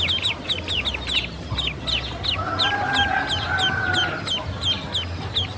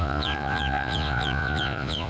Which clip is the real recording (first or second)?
first